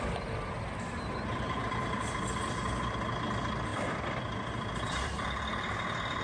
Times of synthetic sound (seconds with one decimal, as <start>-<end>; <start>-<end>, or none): 3.7-4.2